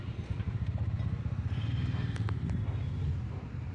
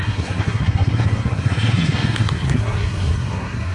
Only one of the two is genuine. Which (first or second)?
first